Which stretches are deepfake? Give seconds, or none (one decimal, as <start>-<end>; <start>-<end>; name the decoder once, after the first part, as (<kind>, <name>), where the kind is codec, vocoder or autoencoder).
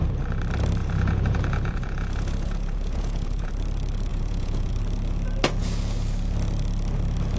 0.8-3.5 (vocoder, Vocos); 4.1-4.7